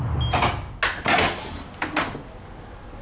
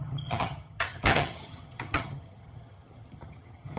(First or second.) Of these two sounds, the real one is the first